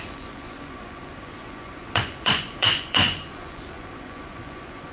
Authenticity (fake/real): fake